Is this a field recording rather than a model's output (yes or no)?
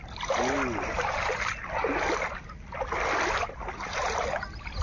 yes